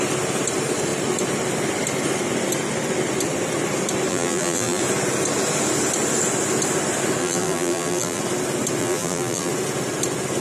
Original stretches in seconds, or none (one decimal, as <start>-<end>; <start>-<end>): 0.0-4.1; 4.8-7.2; 8.2-8.8; 9.5-10.4